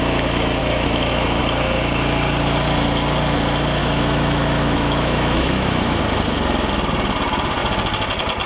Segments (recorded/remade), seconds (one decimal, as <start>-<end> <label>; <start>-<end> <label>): 0.0-0.6 recorded; 0.6-1.4 remade; 1.4-3.8 recorded; 3.8-6.0 remade; 6.0-8.5 recorded